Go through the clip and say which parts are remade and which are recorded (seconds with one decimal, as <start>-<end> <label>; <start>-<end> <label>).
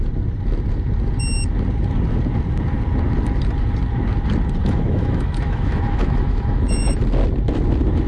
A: 0.0-4.6 recorded; 4.6-7.0 remade; 7.0-8.1 recorded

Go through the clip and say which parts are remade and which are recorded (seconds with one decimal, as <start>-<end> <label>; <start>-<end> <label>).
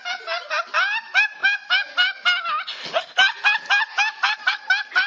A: 0.0-5.1 recorded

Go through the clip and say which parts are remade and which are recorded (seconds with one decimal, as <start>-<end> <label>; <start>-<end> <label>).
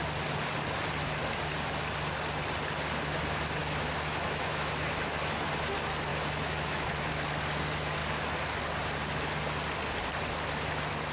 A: 0.0-3.6 recorded; 3.6-5.5 remade; 5.5-6.1 recorded; 6.1-7.1 remade; 7.1-11.1 recorded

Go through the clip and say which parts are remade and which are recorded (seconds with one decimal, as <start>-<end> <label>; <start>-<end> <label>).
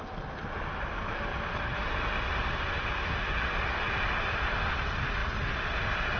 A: 0.0-6.2 recorded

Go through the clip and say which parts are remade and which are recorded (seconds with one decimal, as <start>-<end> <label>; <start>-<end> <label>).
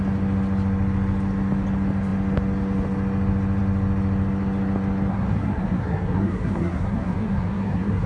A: 0.0-5.1 recorded; 5.1-8.1 remade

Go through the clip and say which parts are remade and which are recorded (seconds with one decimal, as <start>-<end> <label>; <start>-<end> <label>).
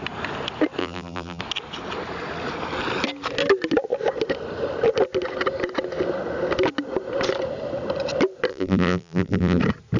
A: 0.0-0.8 recorded; 0.8-1.4 remade; 1.4-8.5 recorded; 8.5-9.6 remade; 9.6-10.0 recorded